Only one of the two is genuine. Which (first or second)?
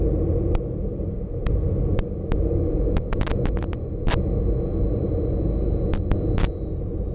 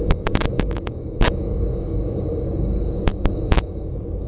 first